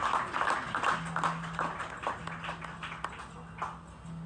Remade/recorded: recorded